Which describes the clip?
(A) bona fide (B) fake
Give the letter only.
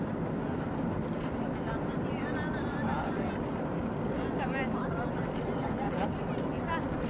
A